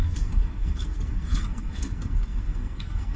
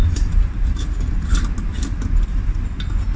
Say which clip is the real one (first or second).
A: second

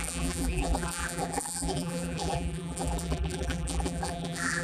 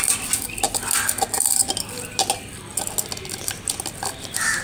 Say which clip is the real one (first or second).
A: second